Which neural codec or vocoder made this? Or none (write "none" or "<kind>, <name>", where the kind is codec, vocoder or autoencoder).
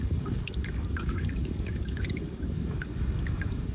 codec, DAC